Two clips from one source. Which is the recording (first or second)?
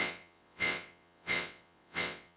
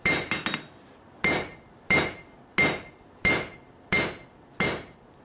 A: second